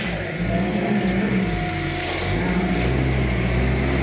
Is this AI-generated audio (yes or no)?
no